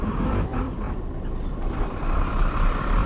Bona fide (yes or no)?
no